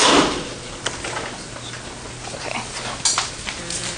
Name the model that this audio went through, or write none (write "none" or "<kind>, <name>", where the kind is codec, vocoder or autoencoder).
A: none